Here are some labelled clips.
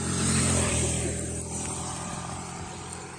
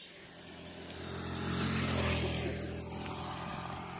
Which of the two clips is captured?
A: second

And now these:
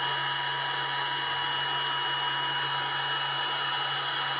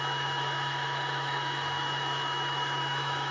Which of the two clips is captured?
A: first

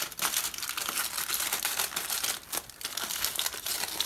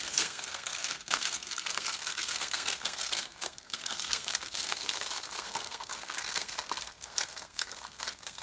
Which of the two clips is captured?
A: first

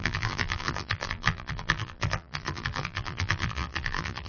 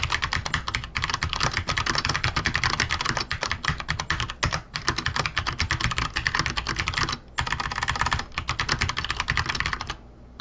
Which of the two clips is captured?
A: second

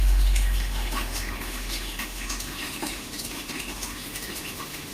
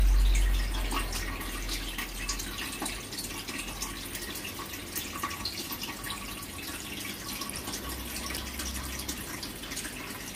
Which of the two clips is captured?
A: second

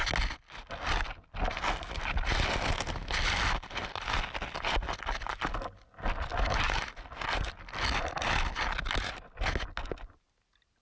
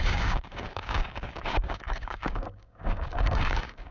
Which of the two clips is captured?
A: first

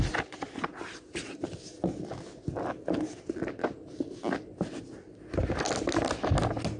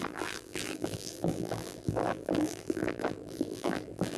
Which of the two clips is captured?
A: first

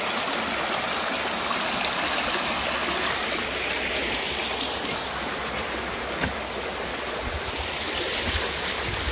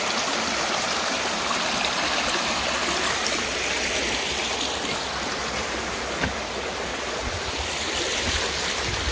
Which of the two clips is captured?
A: first